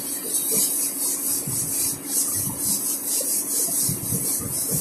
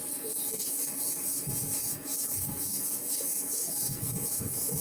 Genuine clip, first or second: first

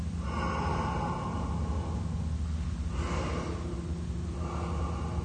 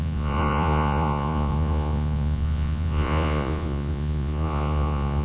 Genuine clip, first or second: first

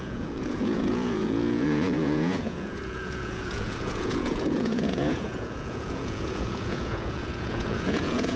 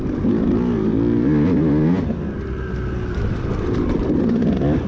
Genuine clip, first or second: second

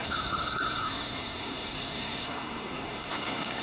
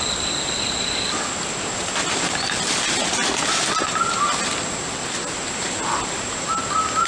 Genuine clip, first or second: second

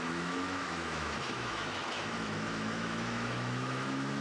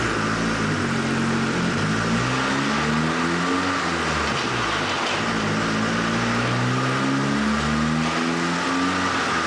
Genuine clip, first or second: second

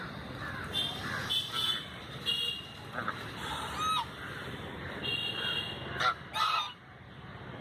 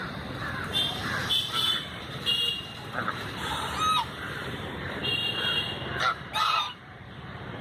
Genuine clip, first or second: first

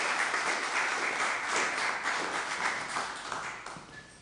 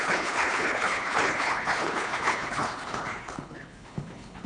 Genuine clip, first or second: first